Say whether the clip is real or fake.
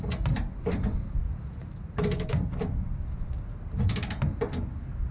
real